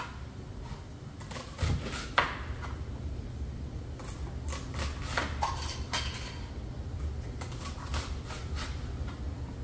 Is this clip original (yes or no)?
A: yes